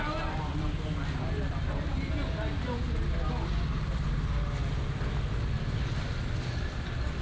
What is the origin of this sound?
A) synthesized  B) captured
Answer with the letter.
B